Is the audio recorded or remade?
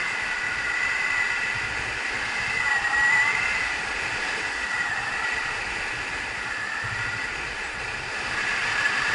recorded